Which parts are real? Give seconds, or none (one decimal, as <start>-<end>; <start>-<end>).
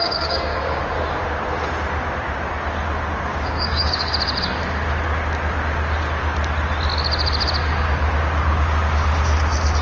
0.8-3.3; 4.1-9.8